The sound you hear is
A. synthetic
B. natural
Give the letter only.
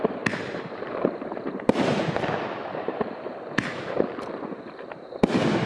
A